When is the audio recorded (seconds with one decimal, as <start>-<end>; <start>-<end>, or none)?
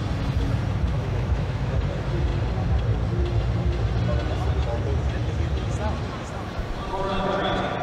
0.0-0.9; 1.8-7.8